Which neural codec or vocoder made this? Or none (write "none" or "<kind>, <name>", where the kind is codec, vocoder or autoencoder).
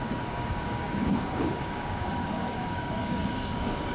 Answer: codec, DAC